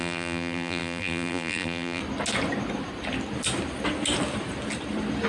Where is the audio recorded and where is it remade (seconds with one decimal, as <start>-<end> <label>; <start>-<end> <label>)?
0.0-2.0 remade; 2.0-5.3 recorded